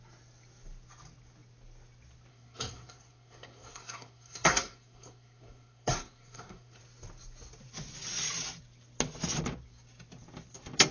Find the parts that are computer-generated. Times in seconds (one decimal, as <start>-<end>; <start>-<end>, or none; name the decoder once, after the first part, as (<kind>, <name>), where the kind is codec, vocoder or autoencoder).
2.3-6.8 (codec, SNAC)